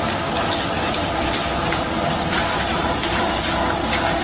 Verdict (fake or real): real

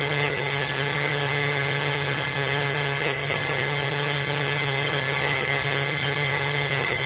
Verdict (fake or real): fake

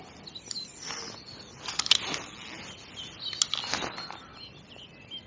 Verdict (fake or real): real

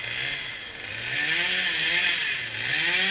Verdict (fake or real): real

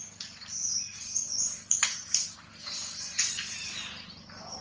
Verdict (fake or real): real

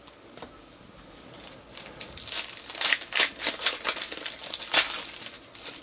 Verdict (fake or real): real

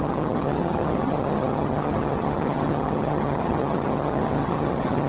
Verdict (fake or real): fake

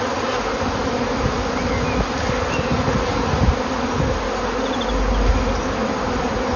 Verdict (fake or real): real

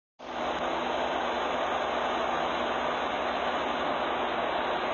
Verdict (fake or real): real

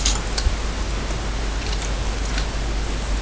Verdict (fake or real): real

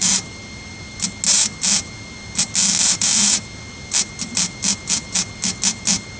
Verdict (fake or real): real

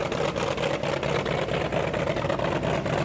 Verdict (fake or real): real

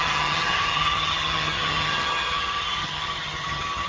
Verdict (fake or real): fake